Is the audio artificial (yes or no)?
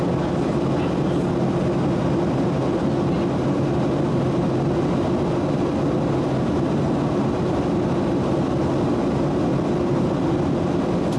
no